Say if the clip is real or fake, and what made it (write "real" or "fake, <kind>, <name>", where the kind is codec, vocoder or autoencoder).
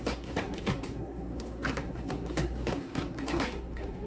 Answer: fake, codec, SNAC